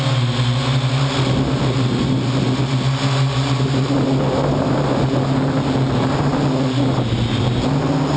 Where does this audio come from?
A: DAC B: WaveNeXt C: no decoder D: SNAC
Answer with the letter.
C